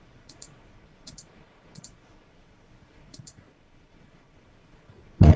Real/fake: fake